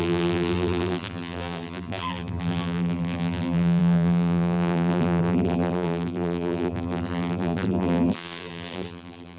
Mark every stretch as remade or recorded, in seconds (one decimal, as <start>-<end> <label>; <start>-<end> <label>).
0.0-9.4 remade